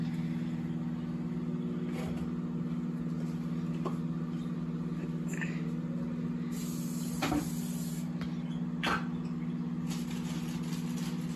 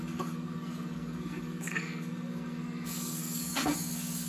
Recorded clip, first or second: first